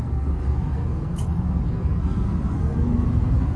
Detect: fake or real fake